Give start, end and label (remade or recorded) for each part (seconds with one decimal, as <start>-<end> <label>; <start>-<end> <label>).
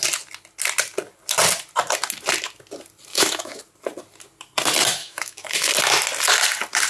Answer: 0.0-3.1 recorded; 3.1-3.6 remade; 3.6-5.0 recorded; 5.0-5.7 remade; 5.7-6.9 recorded